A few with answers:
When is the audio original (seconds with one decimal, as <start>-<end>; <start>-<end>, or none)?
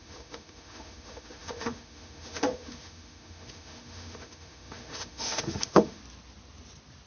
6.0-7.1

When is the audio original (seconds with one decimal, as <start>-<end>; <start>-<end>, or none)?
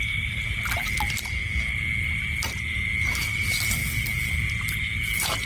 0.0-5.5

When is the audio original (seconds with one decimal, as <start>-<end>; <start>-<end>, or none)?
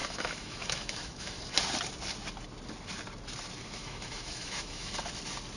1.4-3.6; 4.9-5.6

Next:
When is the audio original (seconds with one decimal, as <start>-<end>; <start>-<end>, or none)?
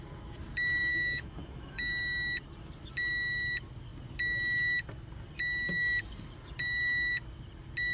0.0-0.9; 1.9-7.9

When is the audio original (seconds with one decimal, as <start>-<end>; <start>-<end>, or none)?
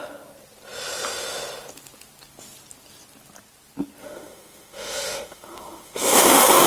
0.0-4.0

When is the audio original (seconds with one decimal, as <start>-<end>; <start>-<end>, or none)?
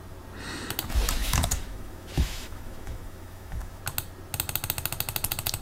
0.0-1.2; 3.8-5.6